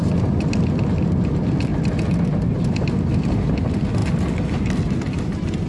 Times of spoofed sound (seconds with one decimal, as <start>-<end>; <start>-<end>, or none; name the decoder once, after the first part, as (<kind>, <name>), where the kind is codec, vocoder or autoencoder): none